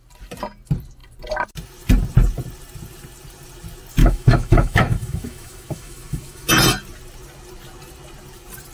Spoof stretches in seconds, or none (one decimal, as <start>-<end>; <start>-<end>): 4.0-6.5